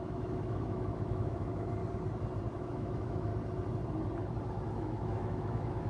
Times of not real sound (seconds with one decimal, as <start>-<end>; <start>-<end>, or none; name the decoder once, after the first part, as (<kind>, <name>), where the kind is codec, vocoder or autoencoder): 0.0-1.8 (autoencoder, DAC-VAE); 2.6-3.3; 4.7-5.9